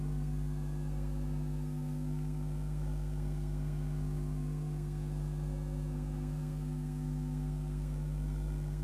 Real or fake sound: fake